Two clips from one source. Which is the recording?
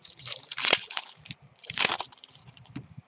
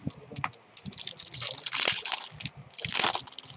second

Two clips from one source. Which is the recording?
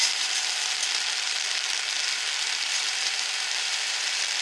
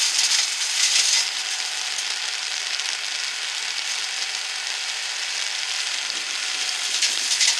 second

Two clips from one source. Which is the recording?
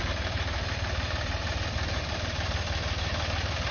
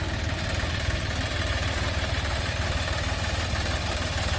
second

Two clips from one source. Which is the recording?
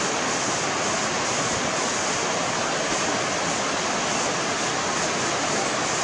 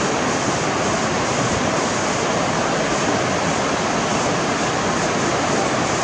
first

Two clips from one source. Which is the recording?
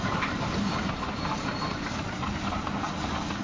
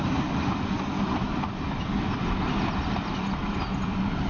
first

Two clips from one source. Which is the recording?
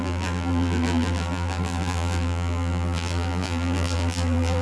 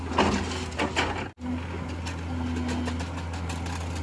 second